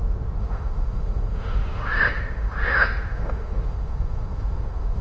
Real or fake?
fake